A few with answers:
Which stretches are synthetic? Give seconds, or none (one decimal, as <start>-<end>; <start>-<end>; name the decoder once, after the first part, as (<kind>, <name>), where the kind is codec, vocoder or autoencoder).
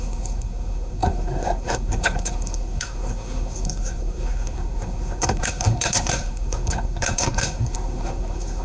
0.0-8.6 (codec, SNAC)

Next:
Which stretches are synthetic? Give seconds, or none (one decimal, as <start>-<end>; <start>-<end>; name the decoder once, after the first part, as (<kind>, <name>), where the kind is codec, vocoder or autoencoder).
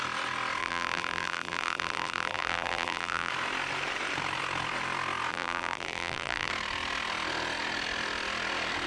0.6-3.3 (vocoder, BigVGAN v2); 5.3-6.5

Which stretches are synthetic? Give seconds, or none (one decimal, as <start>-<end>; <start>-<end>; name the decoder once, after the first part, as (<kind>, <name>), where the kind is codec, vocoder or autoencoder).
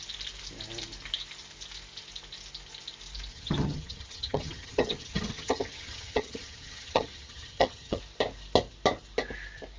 3.3-8.0 (vocoder, HiFi-GAN)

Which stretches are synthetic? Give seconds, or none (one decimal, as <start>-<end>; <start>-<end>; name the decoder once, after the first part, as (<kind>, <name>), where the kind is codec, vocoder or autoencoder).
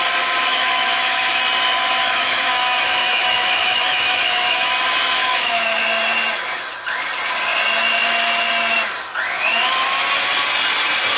0.5-1.4 (autoencoder, DAC-VAE); 2.0-4.7; 5.2-5.8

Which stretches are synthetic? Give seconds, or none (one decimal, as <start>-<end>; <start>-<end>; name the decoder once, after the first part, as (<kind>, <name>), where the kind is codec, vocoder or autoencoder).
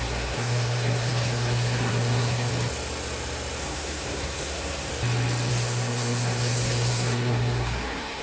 0.0-2.5 (codec, SNAC); 3.6-4.9; 5.5-8.2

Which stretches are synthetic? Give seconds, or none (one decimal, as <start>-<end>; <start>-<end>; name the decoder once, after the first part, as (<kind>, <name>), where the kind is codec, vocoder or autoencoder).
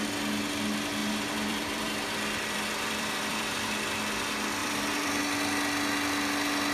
1.0-4.0 (vocoder, BigVGAN v2); 4.6-5.2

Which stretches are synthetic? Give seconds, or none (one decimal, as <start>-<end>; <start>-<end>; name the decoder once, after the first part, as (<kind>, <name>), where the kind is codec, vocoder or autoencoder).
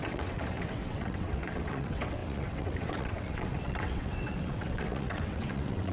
0.0-5.9 (vocoder, WaveNeXt)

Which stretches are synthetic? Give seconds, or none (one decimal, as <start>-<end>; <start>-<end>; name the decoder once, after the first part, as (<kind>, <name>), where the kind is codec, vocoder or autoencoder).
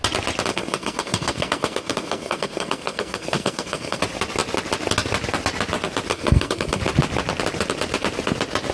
0.5-4.0 (codec, SNAC); 6.1-6.8